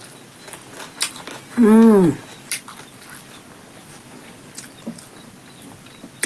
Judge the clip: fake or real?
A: real